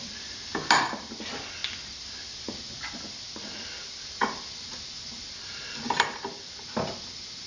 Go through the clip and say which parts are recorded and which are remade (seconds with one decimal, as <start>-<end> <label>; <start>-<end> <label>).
0.0-7.5 recorded